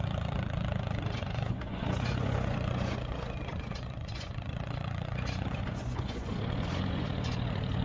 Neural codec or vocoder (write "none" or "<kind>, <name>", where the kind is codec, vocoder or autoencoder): vocoder, Vocos